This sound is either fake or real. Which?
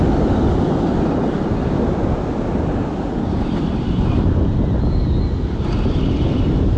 real